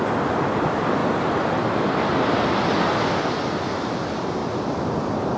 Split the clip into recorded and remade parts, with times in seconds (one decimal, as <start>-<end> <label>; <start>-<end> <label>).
0.0-1.0 recorded; 1.0-3.2 remade; 3.2-4.4 recorded; 4.4-5.4 remade